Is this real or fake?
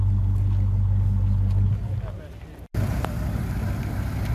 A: real